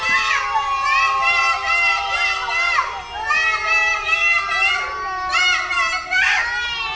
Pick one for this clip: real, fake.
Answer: real